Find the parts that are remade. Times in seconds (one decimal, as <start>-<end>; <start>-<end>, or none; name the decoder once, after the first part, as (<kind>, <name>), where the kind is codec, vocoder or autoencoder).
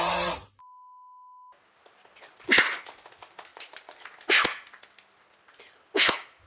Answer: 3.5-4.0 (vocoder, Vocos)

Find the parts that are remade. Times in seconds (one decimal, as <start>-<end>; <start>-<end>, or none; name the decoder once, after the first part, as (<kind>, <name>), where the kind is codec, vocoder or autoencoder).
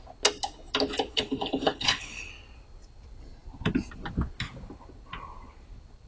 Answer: 1.1-2.3 (codec, HILCodec)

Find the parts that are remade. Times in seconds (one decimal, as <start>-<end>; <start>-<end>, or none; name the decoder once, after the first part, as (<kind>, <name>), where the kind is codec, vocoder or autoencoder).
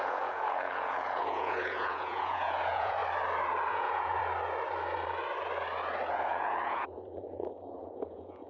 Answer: 0.0-3.0 (vocoder, Vocos); 3.7-4.2; 6.1-8.5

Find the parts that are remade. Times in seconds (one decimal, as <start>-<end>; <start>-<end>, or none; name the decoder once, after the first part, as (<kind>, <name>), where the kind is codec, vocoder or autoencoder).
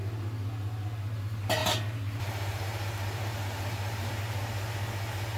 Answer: 1.6-4.2 (vocoder, BigVGAN v2)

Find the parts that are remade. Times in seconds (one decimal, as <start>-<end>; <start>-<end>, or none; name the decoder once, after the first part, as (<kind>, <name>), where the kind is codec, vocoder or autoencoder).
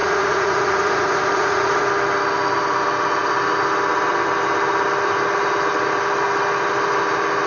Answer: 0.0-1.9 (vocoder, Vocos)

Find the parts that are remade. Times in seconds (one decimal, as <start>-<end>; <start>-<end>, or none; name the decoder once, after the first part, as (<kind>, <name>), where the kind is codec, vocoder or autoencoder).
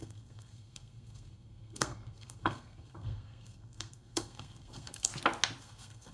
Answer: 0.0-5.1 (codec, SNAC); 5.6-6.1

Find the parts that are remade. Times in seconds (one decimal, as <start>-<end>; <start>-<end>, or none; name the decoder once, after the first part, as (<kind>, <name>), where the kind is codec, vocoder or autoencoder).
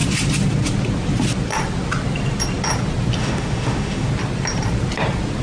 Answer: 3.2-4.1 (autoencoder, DAC-VAE)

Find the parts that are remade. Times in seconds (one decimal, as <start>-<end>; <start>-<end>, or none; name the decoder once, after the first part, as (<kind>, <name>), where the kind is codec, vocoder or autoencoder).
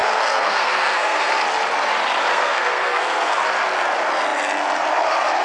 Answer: 0.0-1.3 (codec, SNAC); 2.3-3.4